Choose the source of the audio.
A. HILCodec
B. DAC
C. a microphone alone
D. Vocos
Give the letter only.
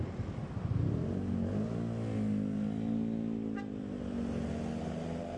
C